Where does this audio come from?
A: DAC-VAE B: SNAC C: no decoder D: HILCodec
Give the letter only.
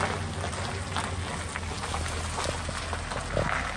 C